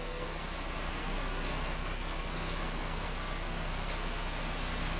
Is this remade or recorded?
remade